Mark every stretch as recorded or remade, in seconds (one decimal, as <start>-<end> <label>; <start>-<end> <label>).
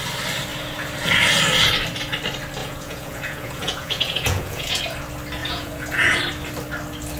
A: 0.0-2.6 recorded; 2.6-4.8 remade; 4.8-5.4 recorded; 5.4-6.2 remade; 6.2-7.2 recorded